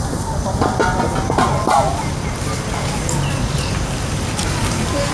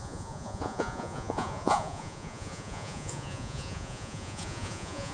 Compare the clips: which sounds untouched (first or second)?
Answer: first